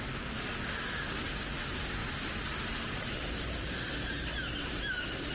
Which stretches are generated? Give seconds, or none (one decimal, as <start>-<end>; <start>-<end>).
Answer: 2.0-5.3